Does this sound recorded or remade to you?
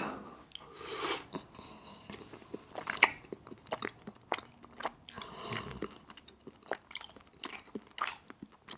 recorded